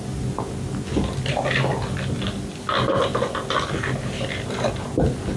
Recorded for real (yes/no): yes